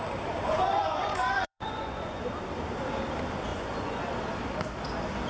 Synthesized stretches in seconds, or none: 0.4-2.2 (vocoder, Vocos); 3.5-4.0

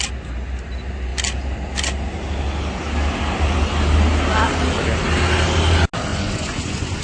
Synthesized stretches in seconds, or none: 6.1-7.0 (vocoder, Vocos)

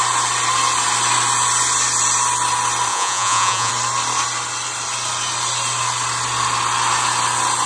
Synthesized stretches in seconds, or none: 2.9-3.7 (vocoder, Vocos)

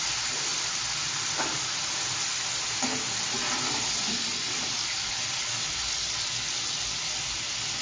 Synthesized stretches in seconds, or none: none

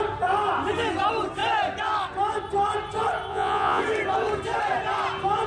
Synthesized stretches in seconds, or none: 3.3-3.8 (vocoder, Vocos)